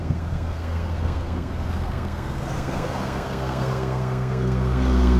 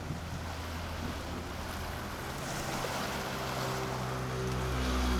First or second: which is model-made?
first